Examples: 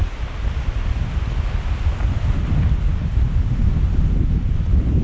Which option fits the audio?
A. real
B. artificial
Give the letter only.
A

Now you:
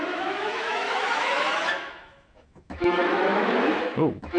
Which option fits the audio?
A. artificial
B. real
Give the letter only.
A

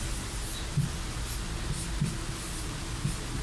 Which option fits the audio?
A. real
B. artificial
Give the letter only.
A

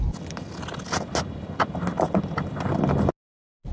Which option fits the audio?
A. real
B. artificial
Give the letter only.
A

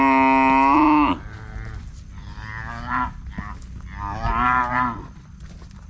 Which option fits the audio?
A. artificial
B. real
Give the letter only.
B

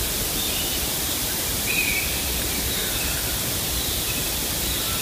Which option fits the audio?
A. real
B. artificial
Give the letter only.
A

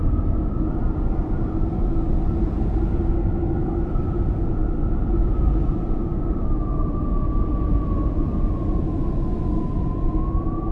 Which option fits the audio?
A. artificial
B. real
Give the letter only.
B